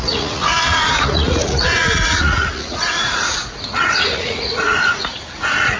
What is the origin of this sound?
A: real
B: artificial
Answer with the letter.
B